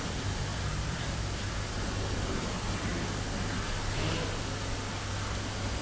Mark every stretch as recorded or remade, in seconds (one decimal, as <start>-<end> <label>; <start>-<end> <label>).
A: 0.0-2.9 remade; 2.9-4.9 recorded; 4.9-5.8 remade